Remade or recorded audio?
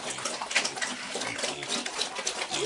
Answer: recorded